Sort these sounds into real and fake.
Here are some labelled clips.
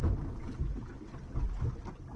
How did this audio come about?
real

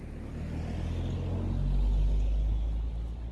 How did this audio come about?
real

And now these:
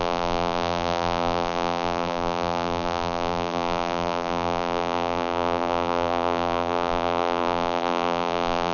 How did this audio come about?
fake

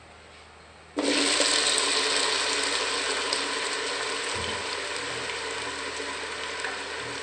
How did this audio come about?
real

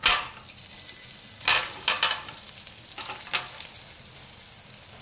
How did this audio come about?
real